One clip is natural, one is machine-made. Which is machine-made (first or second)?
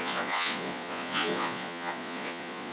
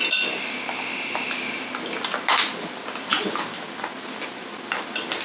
first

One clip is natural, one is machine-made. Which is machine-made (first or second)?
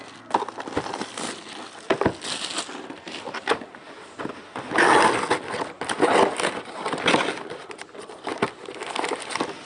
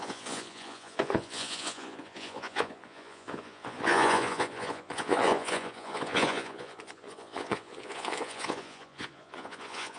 second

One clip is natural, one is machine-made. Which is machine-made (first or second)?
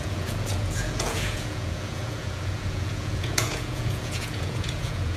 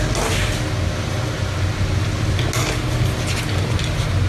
first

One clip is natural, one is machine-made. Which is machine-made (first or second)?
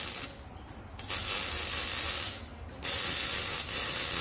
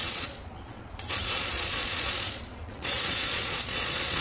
second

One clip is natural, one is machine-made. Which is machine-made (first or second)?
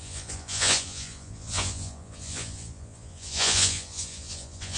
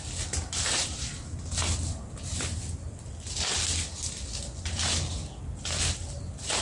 first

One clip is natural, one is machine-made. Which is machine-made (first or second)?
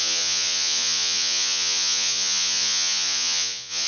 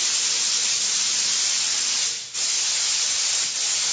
first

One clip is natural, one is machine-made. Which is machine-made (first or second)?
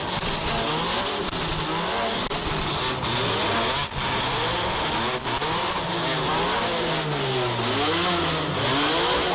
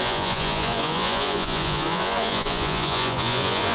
second